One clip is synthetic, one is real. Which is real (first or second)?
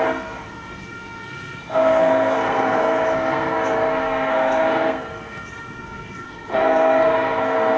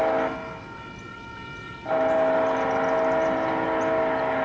second